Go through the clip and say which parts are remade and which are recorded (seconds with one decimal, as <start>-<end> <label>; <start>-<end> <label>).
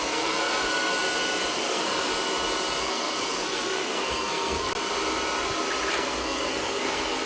0.0-0.9 remade; 0.9-1.5 recorded; 1.5-2.1 remade; 2.1-2.8 recorded; 2.8-4.7 remade; 4.7-5.9 recorded; 5.9-7.3 remade